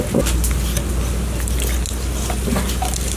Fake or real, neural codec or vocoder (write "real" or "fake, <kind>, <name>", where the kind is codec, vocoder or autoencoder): real